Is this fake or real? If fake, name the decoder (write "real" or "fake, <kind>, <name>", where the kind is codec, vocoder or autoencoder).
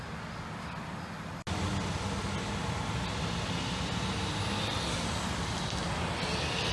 real